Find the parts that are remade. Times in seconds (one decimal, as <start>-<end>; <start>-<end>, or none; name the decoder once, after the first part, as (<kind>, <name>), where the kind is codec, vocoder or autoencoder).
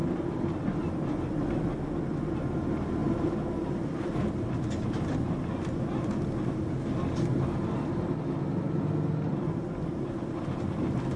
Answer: 3.0-4.3 (vocoder, BigVGAN v2); 9.3-11.2